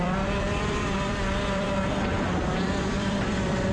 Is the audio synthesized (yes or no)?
yes